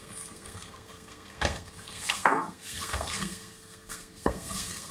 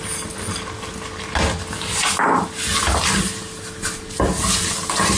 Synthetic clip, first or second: first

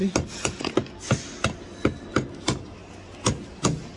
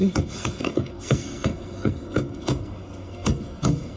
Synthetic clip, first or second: second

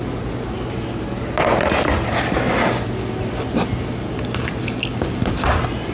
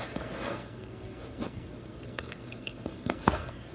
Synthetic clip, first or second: second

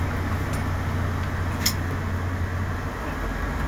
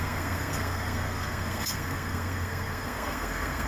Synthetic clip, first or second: second